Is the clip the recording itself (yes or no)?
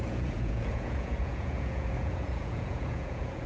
no